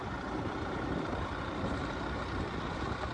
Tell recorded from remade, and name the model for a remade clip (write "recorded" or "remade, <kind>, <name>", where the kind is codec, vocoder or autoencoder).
recorded